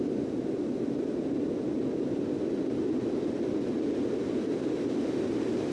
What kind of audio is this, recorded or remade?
recorded